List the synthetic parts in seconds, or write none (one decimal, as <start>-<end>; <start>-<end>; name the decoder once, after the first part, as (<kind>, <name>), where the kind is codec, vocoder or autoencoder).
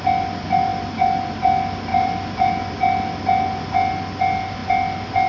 0.7-1.3 (vocoder, BigVGAN v2); 1.9-2.5